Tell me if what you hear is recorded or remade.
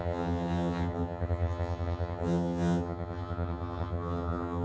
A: remade